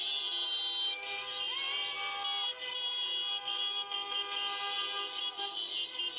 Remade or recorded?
recorded